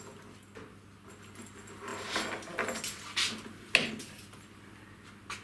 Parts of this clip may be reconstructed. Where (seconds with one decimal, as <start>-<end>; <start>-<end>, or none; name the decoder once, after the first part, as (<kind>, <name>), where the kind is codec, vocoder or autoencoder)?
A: none